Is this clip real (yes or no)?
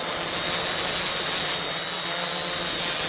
yes